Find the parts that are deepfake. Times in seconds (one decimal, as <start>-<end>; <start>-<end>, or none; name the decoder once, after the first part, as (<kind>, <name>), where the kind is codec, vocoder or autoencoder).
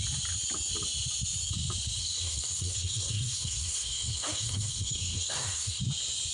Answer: 2.0-5.8 (codec, SNAC)